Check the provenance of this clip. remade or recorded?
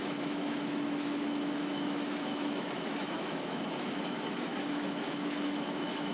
remade